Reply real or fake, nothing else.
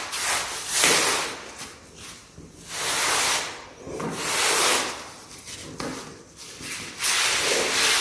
real